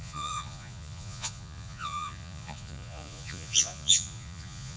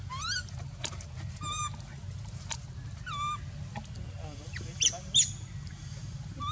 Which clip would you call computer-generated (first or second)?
first